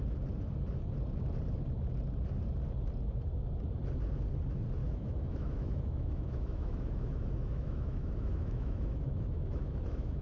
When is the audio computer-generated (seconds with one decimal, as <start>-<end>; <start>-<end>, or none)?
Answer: 4.8-10.2